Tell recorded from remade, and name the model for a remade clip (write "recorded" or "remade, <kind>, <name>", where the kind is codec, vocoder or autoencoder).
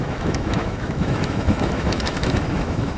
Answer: remade, autoencoder, DAC-VAE